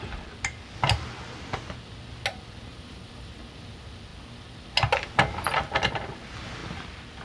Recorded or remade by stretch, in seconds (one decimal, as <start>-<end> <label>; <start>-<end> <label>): 0.0-2.7 recorded; 2.7-3.4 remade; 3.4-7.2 recorded